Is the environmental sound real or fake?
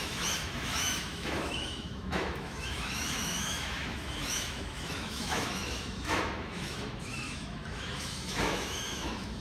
fake